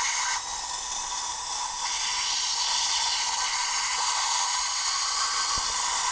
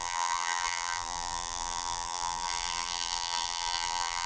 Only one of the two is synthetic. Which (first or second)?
second